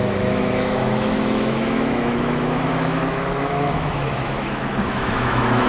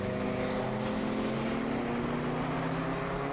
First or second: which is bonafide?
second